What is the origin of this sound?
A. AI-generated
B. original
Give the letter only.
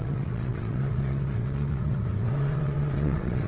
A